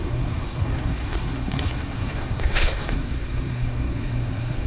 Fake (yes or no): yes